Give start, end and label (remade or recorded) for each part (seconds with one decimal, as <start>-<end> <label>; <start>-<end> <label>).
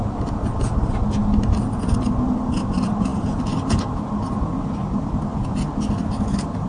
0.0-6.7 recorded